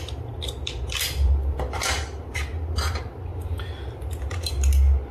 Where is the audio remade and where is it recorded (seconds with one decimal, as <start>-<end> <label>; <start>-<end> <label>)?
0.0-3.3 remade; 3.3-5.1 recorded